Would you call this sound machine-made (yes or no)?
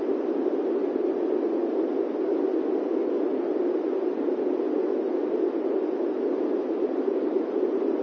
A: no